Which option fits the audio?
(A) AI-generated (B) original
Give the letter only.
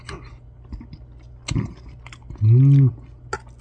B